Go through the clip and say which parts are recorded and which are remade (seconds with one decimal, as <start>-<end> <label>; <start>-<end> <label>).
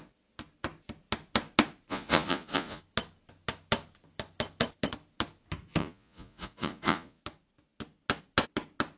0.0-1.9 recorded; 1.9-2.8 remade; 2.8-5.8 recorded; 5.8-7.2 remade; 7.2-9.0 recorded